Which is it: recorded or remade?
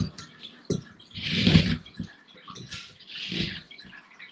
remade